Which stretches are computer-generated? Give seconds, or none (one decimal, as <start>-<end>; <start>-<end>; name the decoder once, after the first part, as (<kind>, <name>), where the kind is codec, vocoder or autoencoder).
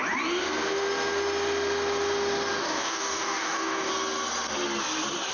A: 2.6-3.9 (codec, DAC)